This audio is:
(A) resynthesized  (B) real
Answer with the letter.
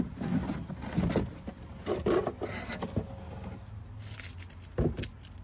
B